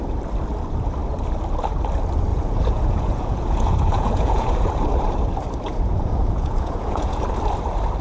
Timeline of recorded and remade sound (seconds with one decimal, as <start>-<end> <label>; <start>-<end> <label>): 0.0-2.3 recorded; 2.3-4.7 remade; 4.7-5.7 recorded; 5.7-7.2 remade; 7.2-8.0 recorded